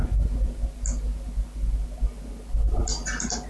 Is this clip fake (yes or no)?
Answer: no